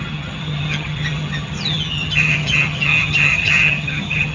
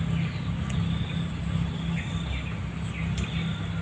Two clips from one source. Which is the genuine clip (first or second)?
second